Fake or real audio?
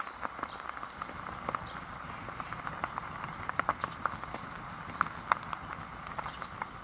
real